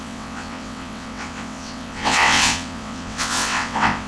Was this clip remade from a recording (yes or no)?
yes